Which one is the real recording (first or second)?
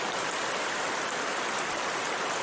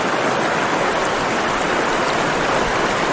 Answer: second